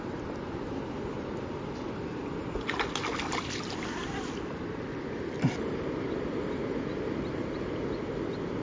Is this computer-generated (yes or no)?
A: yes